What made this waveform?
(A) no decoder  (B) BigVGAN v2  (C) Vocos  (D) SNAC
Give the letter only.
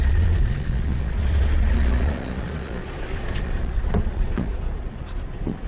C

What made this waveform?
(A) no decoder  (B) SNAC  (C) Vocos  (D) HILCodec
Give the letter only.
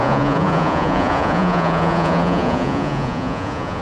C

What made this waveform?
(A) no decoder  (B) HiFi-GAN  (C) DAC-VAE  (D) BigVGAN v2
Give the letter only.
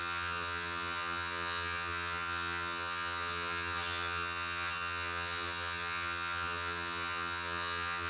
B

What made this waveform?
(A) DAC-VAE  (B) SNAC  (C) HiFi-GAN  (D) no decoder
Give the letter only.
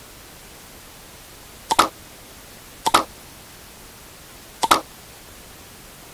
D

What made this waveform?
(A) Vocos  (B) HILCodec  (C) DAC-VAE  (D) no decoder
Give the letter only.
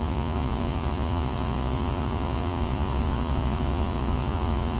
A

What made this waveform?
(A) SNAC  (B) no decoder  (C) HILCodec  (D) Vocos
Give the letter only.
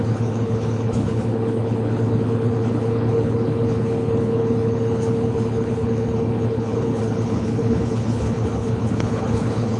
C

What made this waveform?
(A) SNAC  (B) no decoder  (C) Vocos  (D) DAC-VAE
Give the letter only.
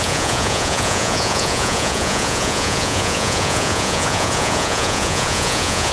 C